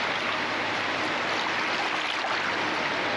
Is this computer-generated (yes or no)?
no